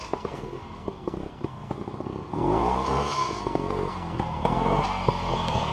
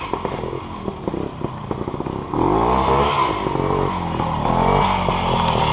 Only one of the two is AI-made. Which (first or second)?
first